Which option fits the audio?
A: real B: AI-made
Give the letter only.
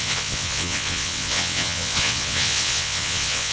B